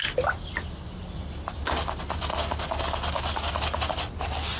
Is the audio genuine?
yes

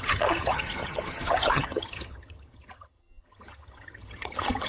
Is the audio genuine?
no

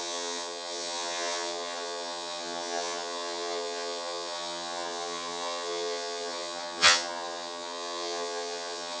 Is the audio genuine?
no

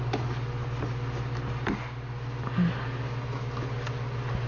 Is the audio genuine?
yes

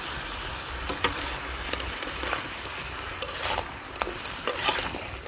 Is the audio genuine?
yes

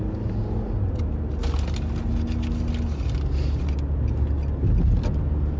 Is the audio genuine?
yes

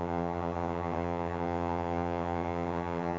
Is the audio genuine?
no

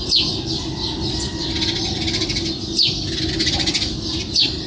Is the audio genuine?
yes